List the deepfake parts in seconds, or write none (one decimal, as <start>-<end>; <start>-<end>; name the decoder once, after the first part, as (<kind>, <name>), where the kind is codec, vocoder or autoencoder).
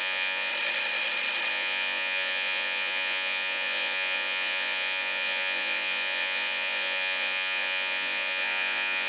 0.0-0.5 (vocoder, Vocos); 1.5-9.1